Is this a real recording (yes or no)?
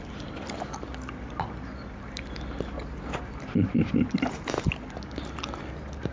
yes